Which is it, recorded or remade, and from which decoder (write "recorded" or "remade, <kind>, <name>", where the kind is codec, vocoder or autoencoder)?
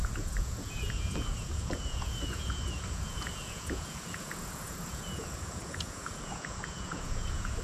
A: remade, vocoder, Vocos